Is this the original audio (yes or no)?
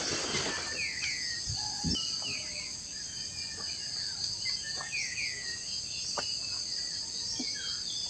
yes